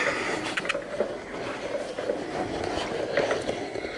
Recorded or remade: recorded